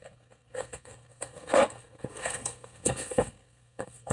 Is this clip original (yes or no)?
no